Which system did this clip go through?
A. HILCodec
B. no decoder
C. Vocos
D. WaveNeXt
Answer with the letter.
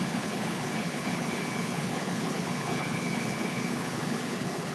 A